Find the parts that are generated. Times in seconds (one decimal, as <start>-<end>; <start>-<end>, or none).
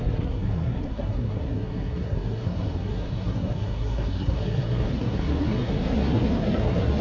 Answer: 0.0-7.0